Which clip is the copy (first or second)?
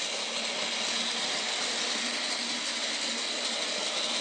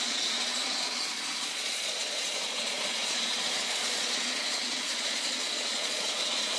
second